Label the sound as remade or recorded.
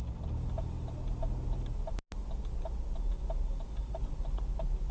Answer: recorded